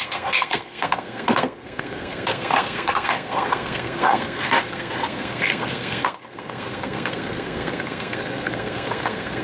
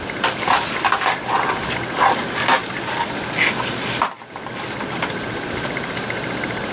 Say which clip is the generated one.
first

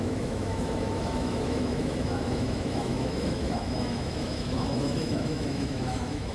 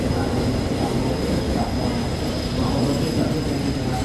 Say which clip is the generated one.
first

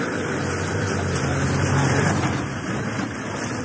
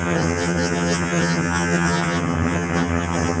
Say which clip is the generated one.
second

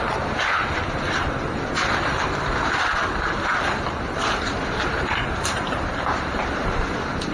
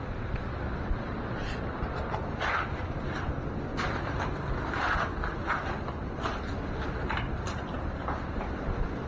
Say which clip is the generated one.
first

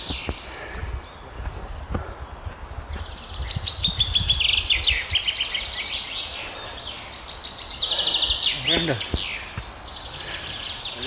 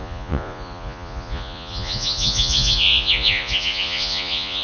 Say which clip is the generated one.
second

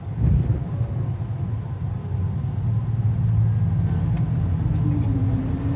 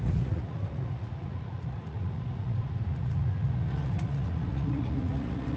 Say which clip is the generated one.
second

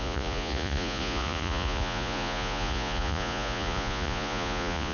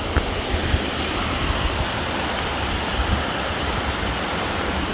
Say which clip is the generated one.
first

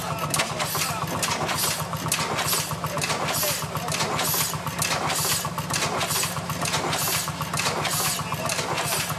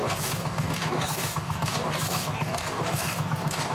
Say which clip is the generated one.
second